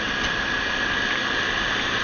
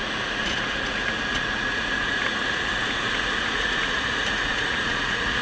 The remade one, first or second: second